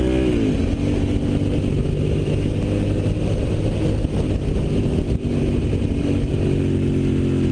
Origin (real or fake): real